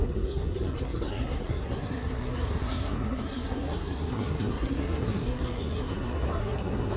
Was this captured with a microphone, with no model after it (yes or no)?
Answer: no